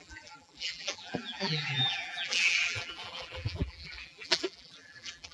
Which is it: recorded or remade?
remade